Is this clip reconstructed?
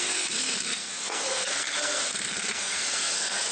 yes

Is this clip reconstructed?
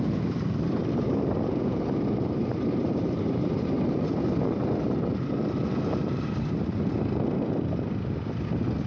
no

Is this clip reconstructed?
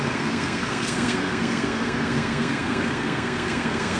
yes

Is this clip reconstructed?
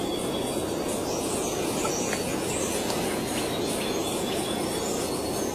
no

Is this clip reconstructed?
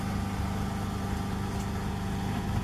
no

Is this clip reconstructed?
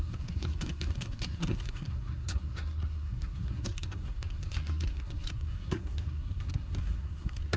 yes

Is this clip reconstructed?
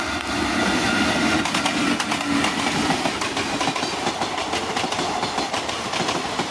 no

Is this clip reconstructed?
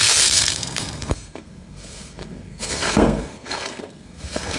yes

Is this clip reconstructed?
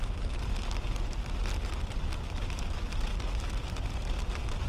no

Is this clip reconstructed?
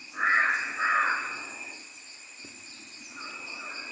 no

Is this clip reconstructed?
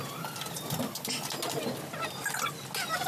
no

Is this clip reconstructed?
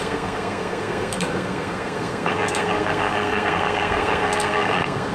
yes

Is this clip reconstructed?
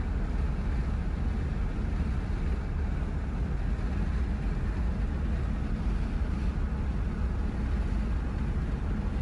no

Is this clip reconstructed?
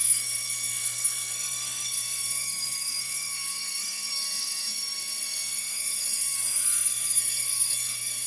yes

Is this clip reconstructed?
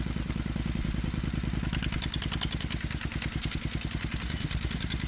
no